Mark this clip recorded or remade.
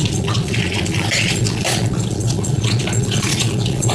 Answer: remade